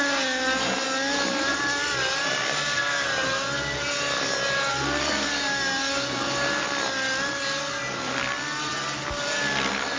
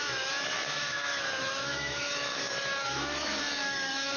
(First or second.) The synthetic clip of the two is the second